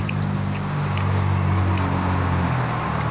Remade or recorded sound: recorded